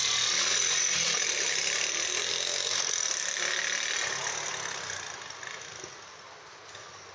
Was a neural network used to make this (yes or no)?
no